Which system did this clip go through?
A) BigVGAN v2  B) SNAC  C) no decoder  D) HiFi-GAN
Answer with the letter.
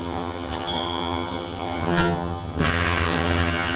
D